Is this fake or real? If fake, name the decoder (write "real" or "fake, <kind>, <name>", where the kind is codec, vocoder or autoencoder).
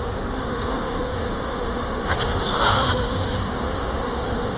fake, autoencoder, DAC-VAE